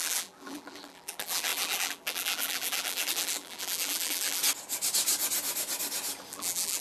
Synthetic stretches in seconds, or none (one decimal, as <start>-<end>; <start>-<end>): 0.0-4.4; 6.3-6.8